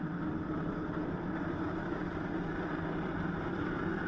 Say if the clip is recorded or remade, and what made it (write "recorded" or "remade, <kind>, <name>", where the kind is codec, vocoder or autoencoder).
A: recorded